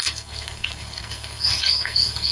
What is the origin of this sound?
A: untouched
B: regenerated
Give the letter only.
B